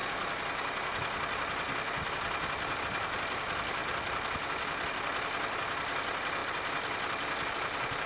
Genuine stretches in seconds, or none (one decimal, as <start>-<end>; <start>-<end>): 0.0-8.1